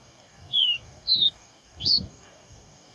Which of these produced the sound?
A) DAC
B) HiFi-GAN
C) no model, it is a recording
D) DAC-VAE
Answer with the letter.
A